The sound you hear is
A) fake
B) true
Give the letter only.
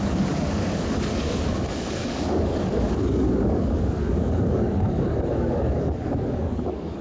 A